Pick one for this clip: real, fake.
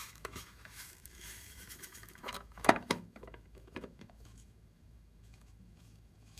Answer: fake